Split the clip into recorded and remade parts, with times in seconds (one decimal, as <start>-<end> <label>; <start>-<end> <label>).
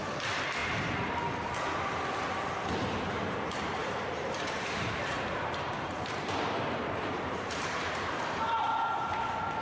0.0-0.6 recorded; 0.6-1.1 remade; 1.1-3.8 recorded; 3.8-8.2 remade; 8.2-9.6 recorded